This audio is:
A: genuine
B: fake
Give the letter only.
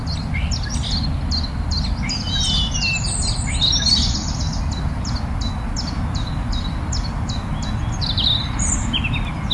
A